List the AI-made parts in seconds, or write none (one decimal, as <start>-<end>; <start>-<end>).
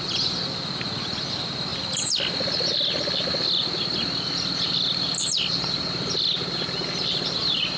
none